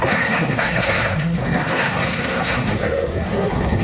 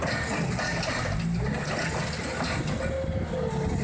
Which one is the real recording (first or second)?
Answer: second